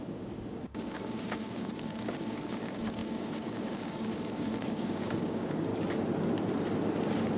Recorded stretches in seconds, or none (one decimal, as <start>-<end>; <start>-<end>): 5.7-7.4